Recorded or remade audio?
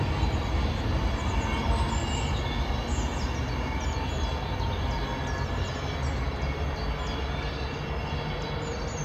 recorded